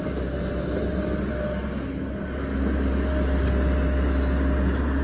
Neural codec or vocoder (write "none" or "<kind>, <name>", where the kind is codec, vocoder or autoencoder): none